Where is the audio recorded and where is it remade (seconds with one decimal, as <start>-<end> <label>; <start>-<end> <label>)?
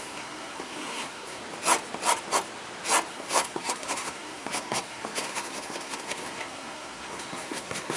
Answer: 0.0-1.4 remade; 1.4-3.1 recorded; 3.1-8.0 remade